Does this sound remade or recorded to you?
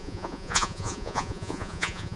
remade